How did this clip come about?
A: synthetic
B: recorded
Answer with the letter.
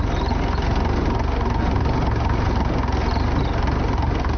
B